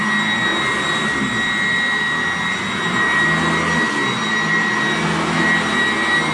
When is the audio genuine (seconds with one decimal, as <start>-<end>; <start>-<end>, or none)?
0.0-6.3